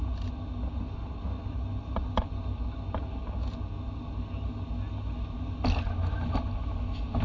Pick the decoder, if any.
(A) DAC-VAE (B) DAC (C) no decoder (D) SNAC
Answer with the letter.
C